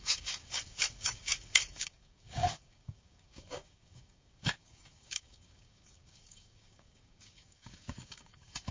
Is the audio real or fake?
fake